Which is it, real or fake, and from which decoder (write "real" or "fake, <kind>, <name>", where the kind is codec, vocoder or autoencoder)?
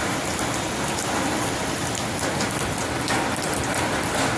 real